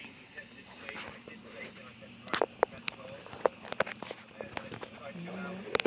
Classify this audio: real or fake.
real